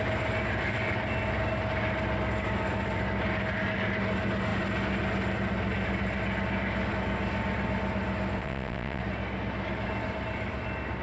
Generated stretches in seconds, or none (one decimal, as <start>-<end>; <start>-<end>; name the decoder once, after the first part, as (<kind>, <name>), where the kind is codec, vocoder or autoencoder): 8.4-9.0 (vocoder, WaveNeXt)